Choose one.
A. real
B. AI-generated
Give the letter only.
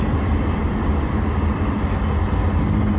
A